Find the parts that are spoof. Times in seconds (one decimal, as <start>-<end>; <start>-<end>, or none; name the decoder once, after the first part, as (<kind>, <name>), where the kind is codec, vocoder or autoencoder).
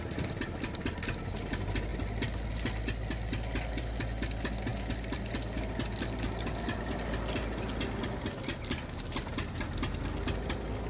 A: none